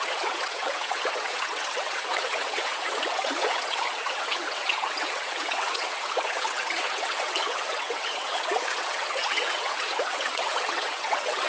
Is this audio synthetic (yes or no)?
yes